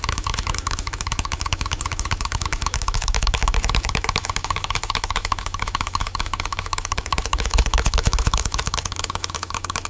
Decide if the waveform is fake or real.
fake